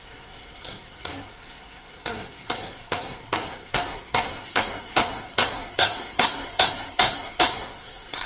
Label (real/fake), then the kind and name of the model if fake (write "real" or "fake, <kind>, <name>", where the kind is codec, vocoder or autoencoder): fake, codec, SNAC